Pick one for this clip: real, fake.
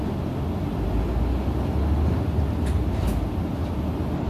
real